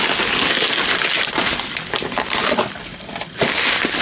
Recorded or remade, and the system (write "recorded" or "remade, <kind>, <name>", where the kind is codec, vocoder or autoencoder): recorded